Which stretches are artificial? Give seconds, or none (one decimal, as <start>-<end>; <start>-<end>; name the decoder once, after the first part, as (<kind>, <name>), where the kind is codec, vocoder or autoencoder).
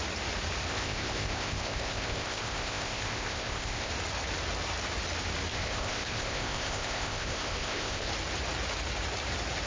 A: 0.7-3.9 (codec, ZipCodec); 5.5-8.1